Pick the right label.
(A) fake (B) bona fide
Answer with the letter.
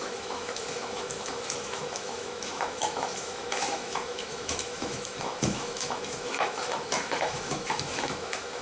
A